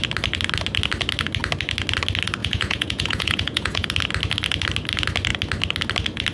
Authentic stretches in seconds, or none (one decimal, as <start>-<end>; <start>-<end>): 0.0-2.4; 3.9-6.3